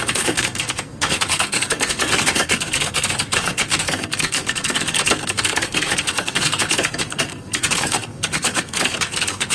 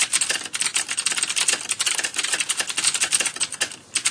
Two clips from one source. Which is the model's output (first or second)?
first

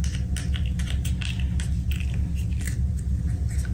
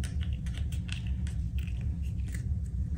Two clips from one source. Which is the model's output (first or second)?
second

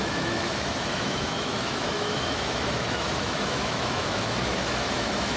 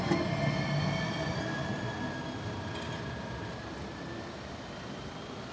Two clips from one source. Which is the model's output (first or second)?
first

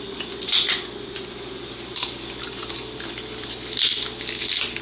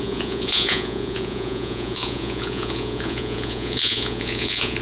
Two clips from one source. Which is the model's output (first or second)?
second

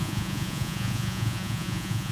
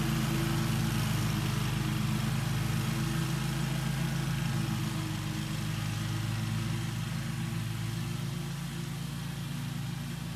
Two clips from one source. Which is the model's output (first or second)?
first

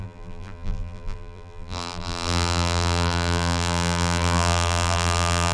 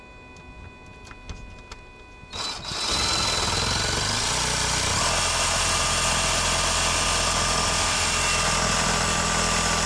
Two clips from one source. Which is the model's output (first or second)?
first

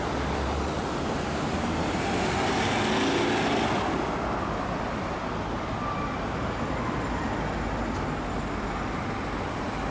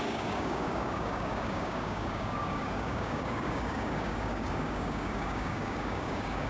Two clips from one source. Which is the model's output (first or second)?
second